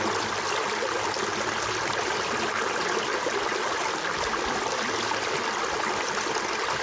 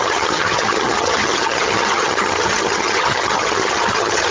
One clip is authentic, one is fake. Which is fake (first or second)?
second